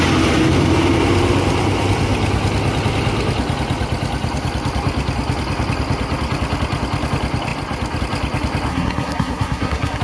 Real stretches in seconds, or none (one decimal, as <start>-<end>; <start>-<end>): 0.0-8.7

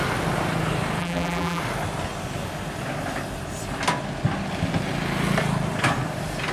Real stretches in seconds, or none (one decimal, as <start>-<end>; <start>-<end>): 0.0-1.0; 1.6-6.5

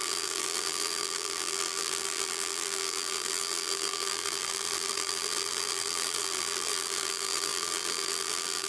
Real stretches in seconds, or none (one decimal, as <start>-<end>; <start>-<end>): none

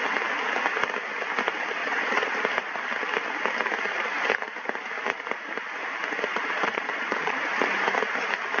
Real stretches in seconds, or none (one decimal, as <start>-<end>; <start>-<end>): 0.0-1.8; 2.4-6.3; 7.4-8.6

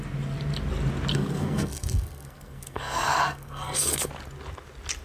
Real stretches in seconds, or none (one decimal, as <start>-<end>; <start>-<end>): 0.0-1.1; 4.1-5.0

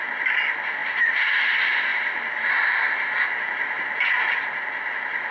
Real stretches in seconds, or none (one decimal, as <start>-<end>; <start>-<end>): 0.0-0.8; 1.5-1.9; 2.9-3.3; 4.1-5.3

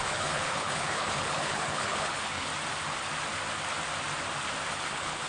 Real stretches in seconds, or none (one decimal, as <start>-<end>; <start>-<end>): 2.5-4.7